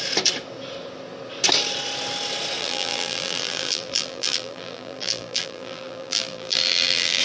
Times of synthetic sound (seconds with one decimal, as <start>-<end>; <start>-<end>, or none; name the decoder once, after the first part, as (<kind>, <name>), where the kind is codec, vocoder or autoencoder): 2.6-7.2 (vocoder, BigVGAN v2)